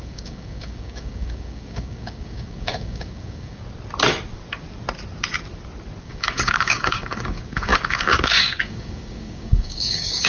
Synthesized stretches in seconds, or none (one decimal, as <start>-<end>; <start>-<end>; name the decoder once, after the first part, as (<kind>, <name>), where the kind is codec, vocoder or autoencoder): 0.0-3.6 (codec, DAC); 6.0-10.3